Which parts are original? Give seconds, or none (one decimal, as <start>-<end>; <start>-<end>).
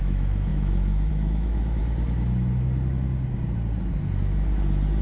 1.8-5.0